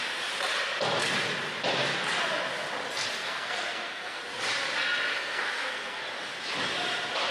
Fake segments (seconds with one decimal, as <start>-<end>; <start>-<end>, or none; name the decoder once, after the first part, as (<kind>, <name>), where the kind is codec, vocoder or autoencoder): 3.2-4.2 (codec, SNAC); 5.1-6.0